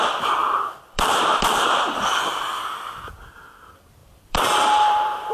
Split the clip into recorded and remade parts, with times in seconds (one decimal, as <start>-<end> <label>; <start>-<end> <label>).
0.0-0.4 recorded; 0.4-3.6 remade; 3.6-4.0 recorded; 4.0-5.3 remade